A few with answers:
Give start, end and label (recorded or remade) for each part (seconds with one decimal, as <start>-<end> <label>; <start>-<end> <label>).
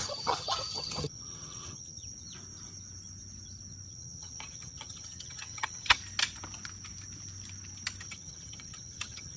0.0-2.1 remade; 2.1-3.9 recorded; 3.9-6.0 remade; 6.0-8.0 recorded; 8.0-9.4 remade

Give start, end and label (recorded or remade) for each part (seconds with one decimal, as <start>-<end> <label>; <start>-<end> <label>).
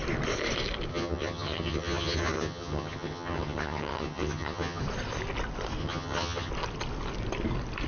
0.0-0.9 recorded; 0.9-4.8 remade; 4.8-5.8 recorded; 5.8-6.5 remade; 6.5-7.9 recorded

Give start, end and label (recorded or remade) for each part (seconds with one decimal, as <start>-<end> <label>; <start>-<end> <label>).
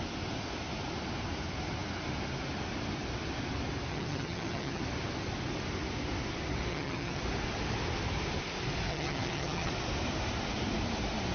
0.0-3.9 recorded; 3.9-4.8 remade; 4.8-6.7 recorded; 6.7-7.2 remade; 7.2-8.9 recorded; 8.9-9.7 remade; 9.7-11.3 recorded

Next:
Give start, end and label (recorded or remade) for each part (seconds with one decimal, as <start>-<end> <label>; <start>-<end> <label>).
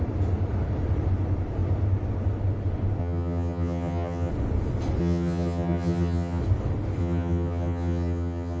0.0-3.0 recorded; 3.0-4.3 remade; 4.3-5.0 recorded; 5.0-6.4 remade; 6.4-7.0 recorded; 7.0-8.6 remade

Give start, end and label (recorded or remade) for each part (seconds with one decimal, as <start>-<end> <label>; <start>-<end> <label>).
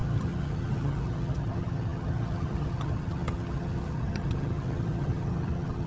0.0-5.9 remade